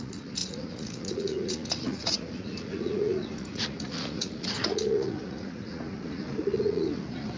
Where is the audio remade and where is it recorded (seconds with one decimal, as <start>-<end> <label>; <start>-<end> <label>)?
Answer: 0.0-7.4 remade